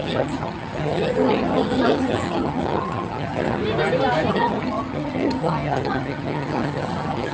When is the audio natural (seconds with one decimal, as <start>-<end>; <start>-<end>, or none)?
3.6-4.3